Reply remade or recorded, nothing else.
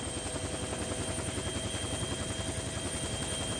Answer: recorded